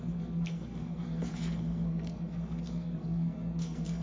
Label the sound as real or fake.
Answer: fake